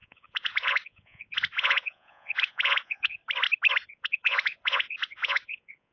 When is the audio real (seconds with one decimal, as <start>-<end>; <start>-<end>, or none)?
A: 3.2-3.9